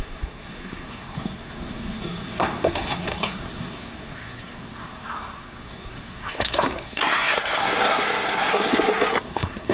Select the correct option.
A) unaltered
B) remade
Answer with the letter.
B